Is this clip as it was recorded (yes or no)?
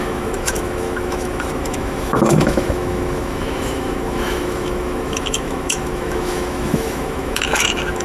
no